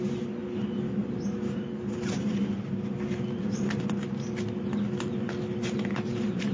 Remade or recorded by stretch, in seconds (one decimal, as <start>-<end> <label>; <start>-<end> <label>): 0.0-6.5 recorded